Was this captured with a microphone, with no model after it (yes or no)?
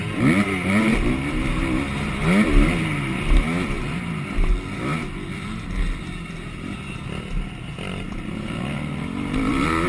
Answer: yes